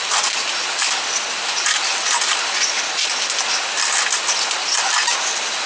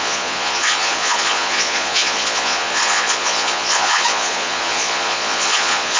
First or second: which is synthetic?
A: second